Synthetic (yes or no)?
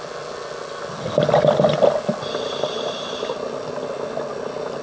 no